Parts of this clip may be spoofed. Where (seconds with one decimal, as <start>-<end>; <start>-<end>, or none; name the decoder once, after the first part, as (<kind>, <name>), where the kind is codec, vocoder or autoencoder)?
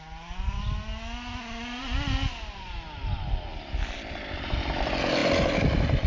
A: none